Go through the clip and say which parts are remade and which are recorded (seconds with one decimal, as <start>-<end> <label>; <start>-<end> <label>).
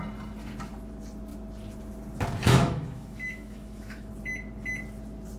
0.0-2.5 recorded; 2.5-4.1 remade; 4.1-5.4 recorded